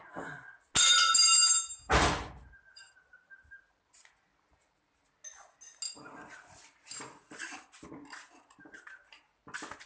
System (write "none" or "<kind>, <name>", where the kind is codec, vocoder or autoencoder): none